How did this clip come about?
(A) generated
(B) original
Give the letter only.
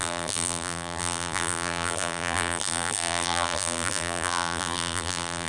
A